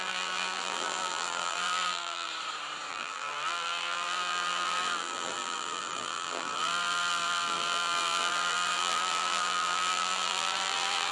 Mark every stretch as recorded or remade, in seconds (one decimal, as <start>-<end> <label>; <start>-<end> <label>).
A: 0.0-2.3 remade; 2.3-2.9 recorded; 2.9-11.1 remade